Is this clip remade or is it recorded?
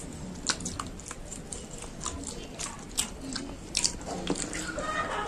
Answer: recorded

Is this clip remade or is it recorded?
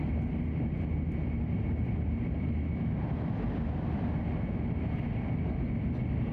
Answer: recorded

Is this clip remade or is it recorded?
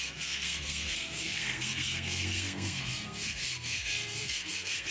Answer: remade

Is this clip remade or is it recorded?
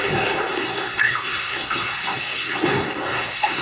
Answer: remade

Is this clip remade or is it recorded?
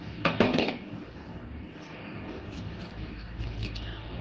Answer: remade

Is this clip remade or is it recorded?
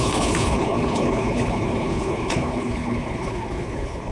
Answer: remade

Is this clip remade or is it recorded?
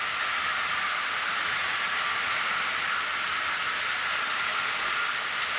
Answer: recorded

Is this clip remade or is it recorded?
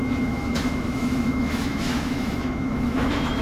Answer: remade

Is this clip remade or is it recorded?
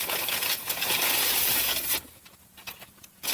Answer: remade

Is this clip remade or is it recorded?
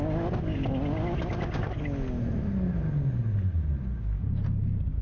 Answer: recorded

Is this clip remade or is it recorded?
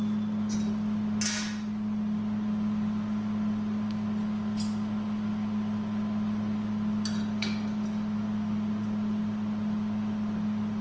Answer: recorded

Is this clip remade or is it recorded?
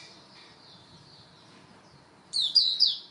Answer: remade